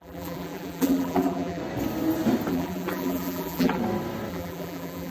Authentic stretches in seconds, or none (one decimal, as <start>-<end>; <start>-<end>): 1.6-2.5; 3.8-4.3